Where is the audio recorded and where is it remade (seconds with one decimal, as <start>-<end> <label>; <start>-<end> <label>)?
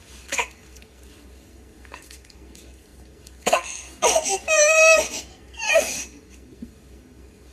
0.0-7.5 remade